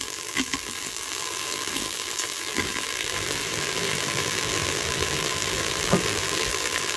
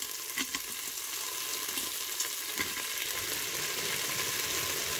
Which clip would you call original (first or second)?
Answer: second